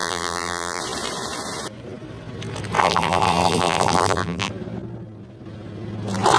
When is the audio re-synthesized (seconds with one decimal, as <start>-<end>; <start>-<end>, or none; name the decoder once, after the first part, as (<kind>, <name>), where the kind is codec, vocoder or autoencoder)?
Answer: 0.0-0.8 (vocoder, BigVGAN v2); 2.8-4.5